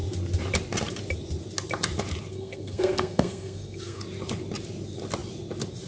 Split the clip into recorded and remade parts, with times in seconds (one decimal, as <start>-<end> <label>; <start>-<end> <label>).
0.0-2.3 recorded; 2.3-4.0 remade; 4.0-5.9 recorded